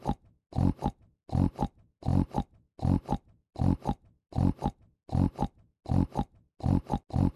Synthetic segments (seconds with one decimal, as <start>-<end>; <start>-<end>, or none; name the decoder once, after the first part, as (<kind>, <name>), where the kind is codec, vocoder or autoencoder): none